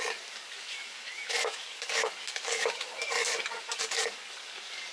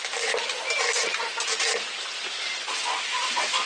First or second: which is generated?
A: first